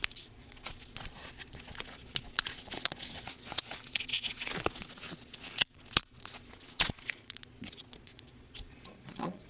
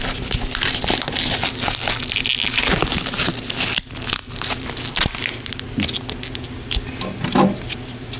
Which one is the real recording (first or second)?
second